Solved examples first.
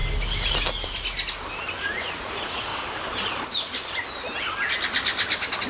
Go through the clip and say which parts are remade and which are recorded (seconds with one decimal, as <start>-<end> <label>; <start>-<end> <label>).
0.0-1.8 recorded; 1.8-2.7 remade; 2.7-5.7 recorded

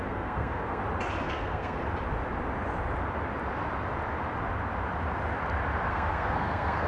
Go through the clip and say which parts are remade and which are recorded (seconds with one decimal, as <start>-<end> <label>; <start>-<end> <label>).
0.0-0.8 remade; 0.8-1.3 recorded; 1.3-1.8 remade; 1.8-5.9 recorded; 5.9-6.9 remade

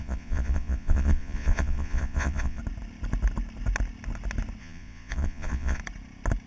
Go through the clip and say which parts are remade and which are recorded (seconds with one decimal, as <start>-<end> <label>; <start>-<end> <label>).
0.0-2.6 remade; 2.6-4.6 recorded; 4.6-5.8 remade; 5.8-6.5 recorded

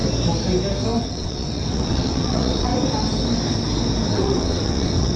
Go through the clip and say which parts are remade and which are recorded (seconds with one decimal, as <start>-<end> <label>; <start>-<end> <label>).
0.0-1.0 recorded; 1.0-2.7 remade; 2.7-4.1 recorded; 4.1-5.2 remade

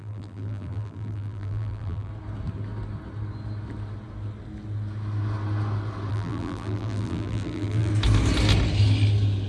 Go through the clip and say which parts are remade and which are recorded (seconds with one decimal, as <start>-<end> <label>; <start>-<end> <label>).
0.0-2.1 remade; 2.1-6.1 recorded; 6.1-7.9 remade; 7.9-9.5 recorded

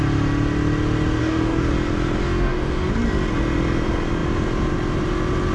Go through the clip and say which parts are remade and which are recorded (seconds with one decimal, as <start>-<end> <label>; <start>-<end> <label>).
0.0-1.2 recorded; 1.2-1.7 remade; 1.7-2.2 recorded; 2.2-2.9 remade; 2.9-5.5 recorded